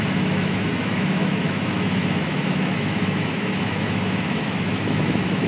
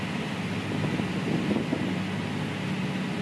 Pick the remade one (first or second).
first